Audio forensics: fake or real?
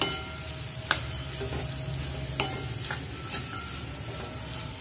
real